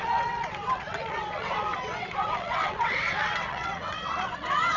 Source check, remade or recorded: remade